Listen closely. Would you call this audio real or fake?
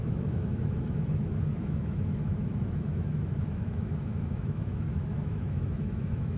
fake